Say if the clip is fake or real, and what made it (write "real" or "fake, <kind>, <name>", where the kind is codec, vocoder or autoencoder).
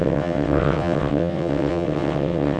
fake, vocoder, WaveNeXt